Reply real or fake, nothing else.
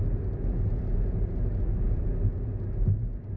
real